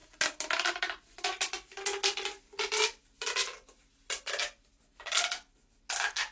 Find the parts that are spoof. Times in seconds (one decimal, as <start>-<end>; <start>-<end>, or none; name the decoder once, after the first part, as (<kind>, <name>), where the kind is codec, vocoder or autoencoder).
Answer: none